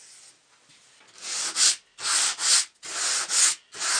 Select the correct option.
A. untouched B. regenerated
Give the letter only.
A